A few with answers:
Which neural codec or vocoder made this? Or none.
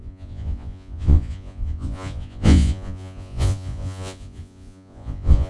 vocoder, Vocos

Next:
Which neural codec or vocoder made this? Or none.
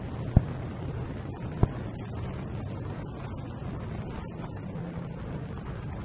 none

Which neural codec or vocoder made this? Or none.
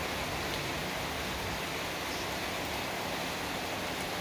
none